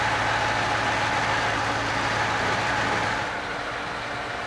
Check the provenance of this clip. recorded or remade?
recorded